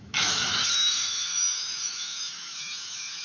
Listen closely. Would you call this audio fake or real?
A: fake